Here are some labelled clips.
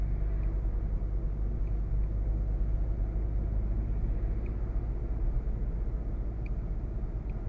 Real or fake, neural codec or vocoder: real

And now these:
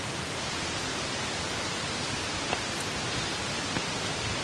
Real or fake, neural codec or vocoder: real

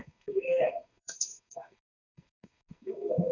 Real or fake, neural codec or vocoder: fake, codec, SNAC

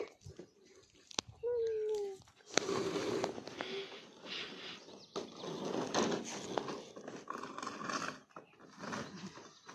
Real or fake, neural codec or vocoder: real